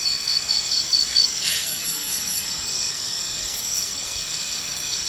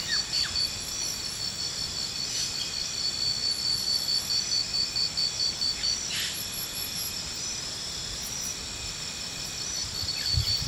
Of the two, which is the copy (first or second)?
first